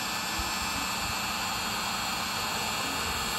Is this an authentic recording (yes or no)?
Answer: yes